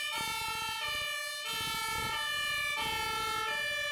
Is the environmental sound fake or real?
real